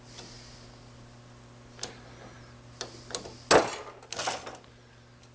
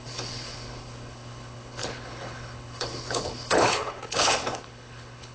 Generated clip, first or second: second